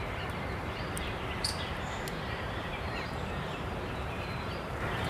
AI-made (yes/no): yes